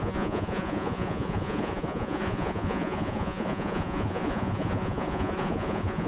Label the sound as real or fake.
fake